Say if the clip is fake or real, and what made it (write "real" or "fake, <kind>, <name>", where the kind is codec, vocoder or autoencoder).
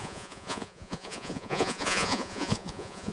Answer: fake, vocoder, Vocos